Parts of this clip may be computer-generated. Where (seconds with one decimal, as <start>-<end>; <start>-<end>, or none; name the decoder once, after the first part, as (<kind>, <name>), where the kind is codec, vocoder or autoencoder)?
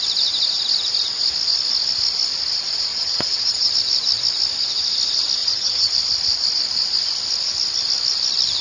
2.9-3.7 (vocoder, HiFi-GAN); 5.4-5.9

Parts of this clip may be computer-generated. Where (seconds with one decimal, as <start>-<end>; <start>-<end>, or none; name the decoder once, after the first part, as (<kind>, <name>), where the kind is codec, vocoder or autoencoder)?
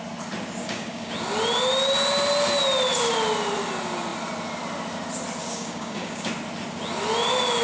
0.6-1.1 (codec, DAC); 5.4-6.3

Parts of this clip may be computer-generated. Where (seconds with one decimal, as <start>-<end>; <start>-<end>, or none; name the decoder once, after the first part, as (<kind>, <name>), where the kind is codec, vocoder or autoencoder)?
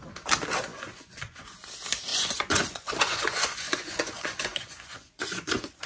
0.7-1.7 (vocoder, Vocos); 2.1-5.9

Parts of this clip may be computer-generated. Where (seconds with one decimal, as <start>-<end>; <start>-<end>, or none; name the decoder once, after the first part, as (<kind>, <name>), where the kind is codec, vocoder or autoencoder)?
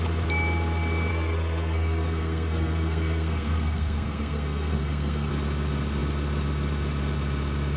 1.1-5.3 (codec, SNAC)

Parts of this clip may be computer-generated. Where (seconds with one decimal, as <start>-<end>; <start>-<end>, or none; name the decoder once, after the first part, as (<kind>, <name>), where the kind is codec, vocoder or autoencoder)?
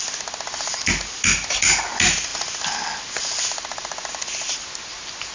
none